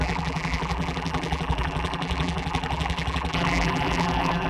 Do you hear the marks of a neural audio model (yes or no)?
yes